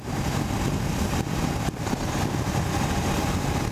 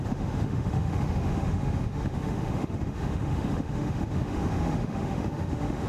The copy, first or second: second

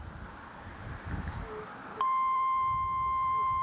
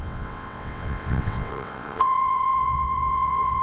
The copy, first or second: second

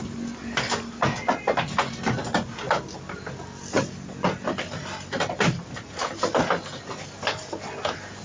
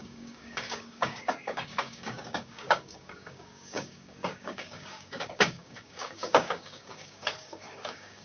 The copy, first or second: second